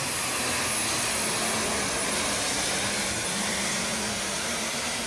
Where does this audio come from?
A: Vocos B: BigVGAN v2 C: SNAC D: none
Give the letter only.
D